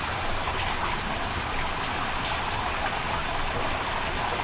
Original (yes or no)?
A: yes